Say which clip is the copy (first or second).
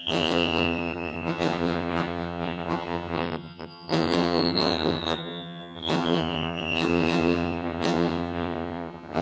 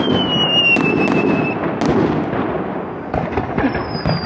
first